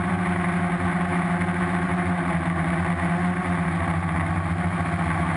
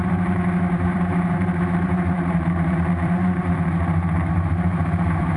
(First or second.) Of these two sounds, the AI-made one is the second